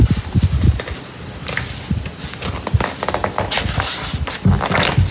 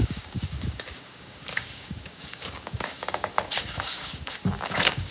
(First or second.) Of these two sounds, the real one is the first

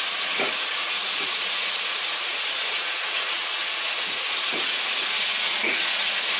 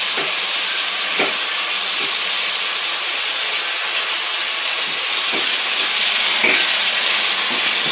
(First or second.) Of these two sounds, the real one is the second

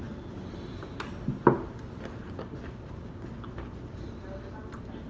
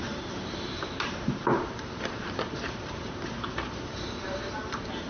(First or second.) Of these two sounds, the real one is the first